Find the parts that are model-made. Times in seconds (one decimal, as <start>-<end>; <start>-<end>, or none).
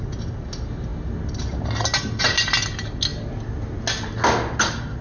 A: none